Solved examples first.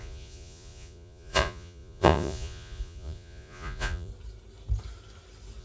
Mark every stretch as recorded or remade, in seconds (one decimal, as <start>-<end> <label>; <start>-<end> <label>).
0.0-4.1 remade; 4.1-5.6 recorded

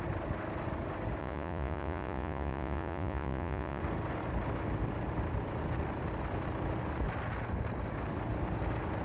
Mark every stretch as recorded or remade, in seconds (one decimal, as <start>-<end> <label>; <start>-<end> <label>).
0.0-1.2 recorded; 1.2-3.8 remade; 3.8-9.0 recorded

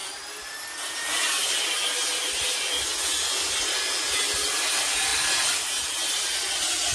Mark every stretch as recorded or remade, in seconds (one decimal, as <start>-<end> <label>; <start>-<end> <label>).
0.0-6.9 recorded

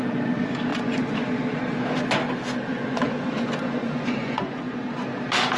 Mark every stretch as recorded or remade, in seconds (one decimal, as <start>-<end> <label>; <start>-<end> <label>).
0.0-0.7 recorded; 0.7-1.3 remade; 1.3-2.7 recorded; 2.7-4.8 remade; 4.8-5.6 recorded

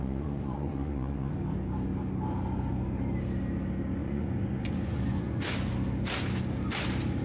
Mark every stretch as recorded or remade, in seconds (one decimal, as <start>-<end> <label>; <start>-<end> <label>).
0.0-1.3 remade; 1.3-4.0 recorded; 4.0-5.5 remade; 5.5-7.2 recorded